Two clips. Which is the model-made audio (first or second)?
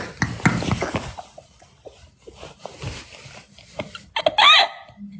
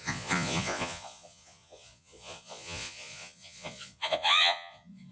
second